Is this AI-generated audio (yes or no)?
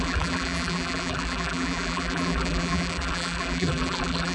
yes